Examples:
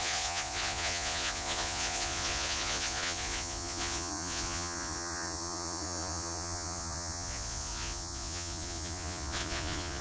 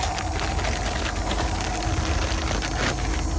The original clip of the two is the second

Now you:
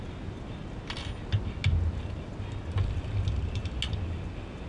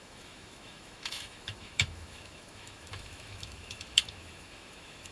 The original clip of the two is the first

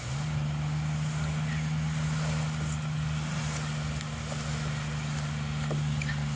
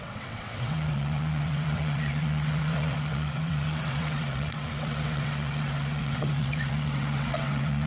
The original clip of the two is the first